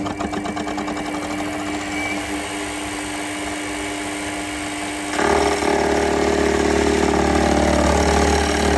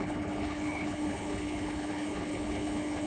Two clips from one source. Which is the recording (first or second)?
first